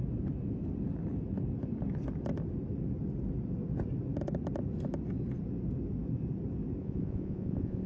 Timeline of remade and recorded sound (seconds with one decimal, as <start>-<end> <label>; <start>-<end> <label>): 0.0-6.8 recorded; 6.8-7.9 remade